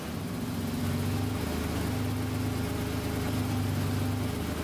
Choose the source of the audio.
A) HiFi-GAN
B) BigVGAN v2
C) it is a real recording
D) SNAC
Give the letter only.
C